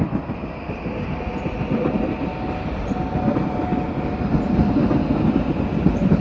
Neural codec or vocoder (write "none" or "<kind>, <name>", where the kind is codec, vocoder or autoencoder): none